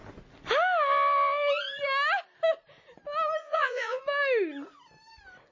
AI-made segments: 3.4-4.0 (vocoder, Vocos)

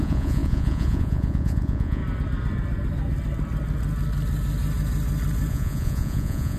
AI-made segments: 0.0-2.0 (vocoder, Vocos); 5.5-6.6

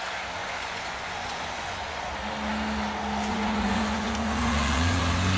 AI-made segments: 0.4-2.1 (vocoder, Vocos); 3.3-5.0